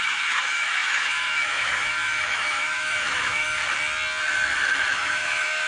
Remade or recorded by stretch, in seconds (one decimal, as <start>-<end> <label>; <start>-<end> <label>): 0.0-3.6 remade; 3.6-4.9 recorded; 4.9-5.7 remade